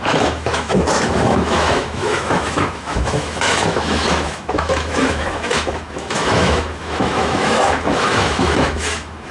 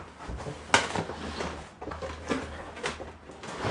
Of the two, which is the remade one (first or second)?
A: first